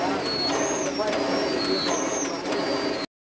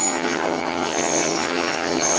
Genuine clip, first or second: first